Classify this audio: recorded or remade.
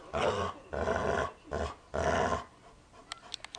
recorded